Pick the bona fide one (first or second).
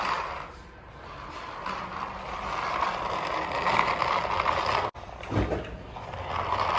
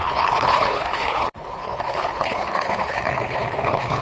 first